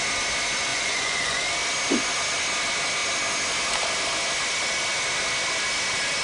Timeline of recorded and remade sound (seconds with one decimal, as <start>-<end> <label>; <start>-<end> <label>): 0.0-0.7 recorded; 0.7-1.4 remade; 1.4-6.2 recorded